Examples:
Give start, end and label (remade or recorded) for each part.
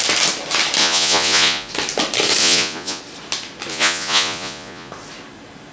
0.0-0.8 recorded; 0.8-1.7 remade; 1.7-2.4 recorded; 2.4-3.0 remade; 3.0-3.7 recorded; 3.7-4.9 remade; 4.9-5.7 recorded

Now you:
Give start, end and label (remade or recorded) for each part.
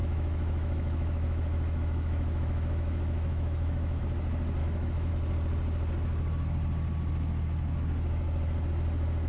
0.0-4.0 remade; 4.0-4.6 recorded; 4.6-5.1 remade; 5.1-9.3 recorded